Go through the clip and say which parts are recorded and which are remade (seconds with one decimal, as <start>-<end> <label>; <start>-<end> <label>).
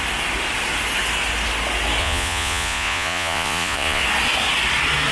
0.0-2.0 recorded; 2.0-4.0 remade; 4.0-5.1 recorded